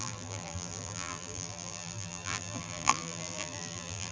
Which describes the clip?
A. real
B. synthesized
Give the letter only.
B